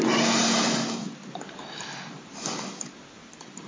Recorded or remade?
recorded